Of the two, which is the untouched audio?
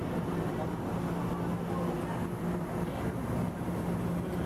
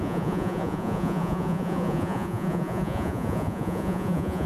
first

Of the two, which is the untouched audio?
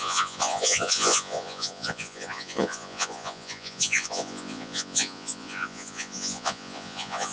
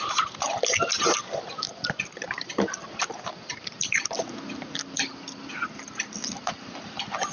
second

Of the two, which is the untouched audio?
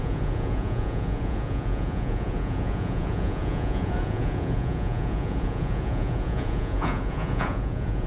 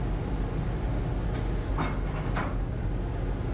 second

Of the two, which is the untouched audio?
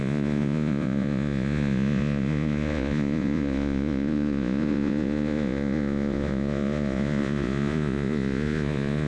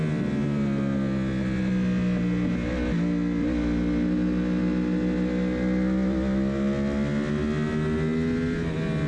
second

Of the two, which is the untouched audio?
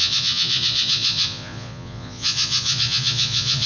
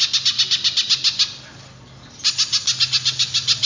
second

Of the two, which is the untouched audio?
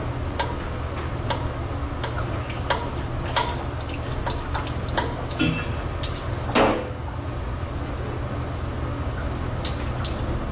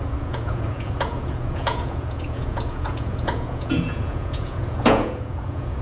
first